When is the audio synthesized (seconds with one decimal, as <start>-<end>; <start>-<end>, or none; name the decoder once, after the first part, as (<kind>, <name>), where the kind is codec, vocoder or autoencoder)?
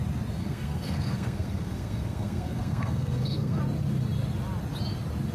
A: 0.4-3.6 (codec, SNAC)